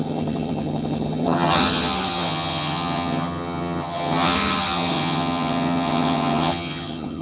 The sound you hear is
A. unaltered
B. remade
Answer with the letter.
B